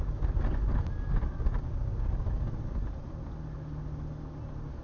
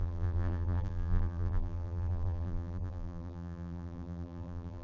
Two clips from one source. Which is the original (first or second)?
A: first